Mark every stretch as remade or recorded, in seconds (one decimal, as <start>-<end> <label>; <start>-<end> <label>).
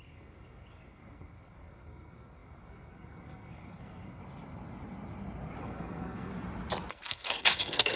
0.0-4.2 remade; 4.2-5.6 recorded; 5.6-6.3 remade; 6.3-6.9 recorded; 6.9-8.0 remade